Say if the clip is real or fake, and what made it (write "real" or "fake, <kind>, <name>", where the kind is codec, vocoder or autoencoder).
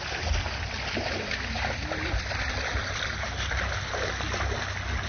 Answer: real